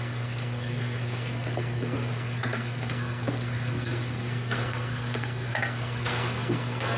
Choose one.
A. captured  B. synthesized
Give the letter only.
B